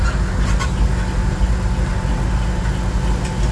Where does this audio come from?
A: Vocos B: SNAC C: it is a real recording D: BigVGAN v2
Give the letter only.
C